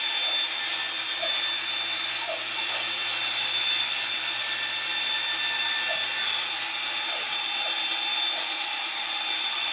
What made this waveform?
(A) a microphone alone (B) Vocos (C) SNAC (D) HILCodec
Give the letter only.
A